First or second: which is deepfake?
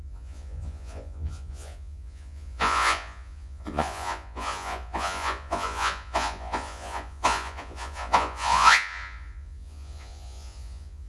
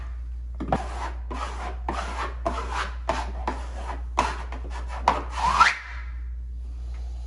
first